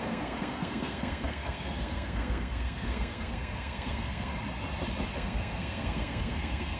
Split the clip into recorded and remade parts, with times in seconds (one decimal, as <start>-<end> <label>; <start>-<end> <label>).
0.0-4.3 remade; 4.3-5.1 recorded; 5.1-6.8 remade